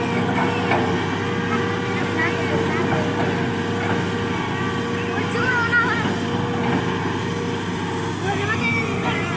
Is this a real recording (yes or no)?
yes